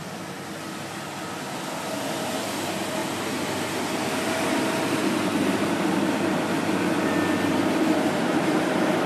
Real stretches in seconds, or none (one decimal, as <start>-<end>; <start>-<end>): 0.0-1.6; 5.0-7.5